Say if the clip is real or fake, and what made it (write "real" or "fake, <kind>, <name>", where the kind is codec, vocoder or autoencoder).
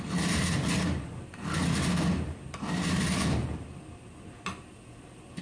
real